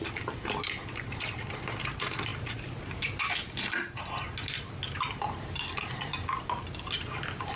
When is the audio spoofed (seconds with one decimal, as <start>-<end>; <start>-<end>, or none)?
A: none

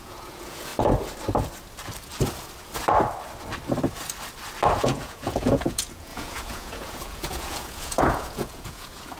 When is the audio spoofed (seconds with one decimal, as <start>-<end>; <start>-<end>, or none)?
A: 0.0-0.7; 4.8-9.2